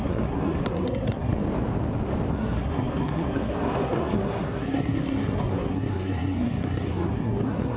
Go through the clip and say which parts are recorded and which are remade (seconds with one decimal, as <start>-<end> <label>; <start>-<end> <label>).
0.0-1.4 remade; 1.4-2.3 recorded; 2.3-7.8 remade